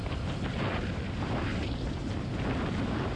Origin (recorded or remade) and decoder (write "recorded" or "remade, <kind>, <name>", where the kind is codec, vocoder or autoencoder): recorded